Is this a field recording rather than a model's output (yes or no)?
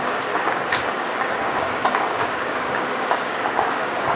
no